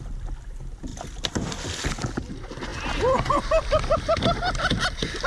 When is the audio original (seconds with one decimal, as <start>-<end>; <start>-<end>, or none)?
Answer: 0.0-5.3